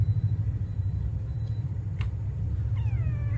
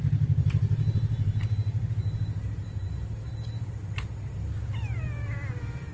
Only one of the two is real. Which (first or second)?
second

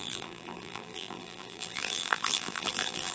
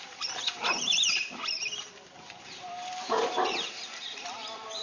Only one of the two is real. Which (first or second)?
second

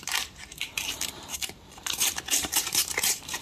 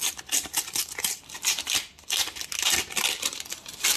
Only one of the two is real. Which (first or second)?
second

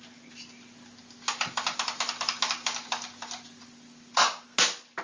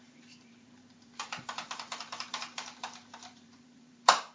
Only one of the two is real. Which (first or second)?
first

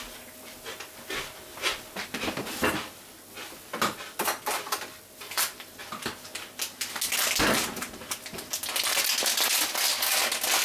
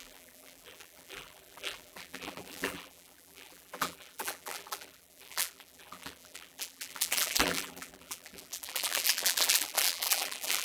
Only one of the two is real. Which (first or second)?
first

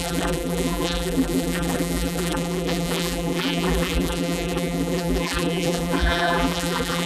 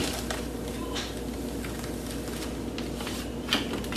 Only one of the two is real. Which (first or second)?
second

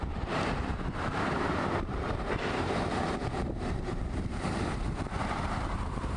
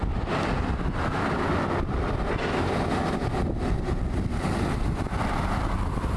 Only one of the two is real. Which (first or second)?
second